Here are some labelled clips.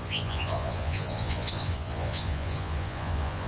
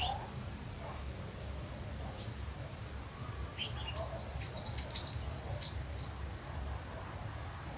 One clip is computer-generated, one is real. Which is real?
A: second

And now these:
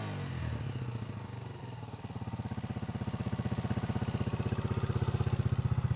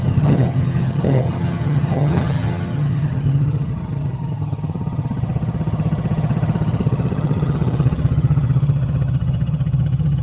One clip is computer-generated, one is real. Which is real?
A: first